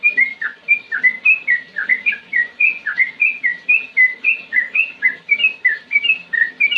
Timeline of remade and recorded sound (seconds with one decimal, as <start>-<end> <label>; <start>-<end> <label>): 0.0-1.8 recorded; 1.8-3.4 remade; 3.4-4.1 recorded; 4.1-5.2 remade; 5.2-6.8 recorded